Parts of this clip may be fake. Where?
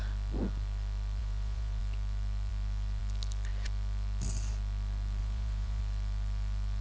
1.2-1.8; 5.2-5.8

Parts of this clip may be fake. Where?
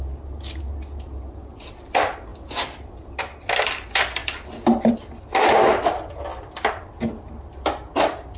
none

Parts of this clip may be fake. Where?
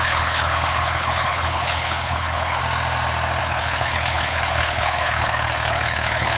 0.0-2.6; 3.4-6.4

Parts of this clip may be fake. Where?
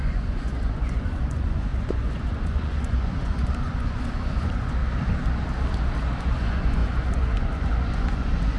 0.0-4.8; 6.2-8.6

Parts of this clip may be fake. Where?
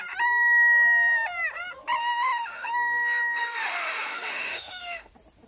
2.0-5.1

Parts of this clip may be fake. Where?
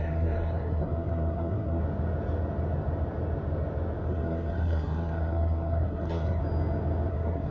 0.0-1.8; 4.1-6.4; 7.1-7.5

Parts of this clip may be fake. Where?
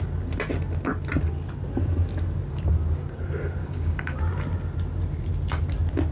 3.6-4.2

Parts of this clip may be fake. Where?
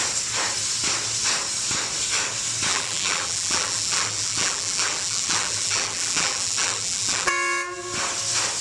2.7-7.3